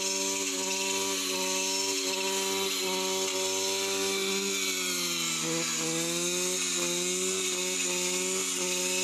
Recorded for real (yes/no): yes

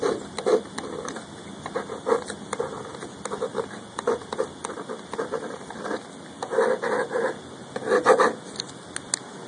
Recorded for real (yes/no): yes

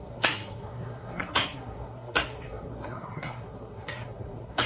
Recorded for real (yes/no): no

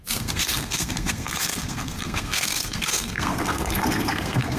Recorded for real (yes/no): no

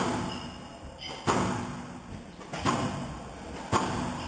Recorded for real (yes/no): yes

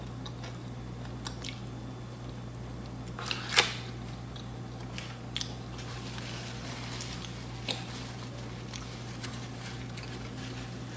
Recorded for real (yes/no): yes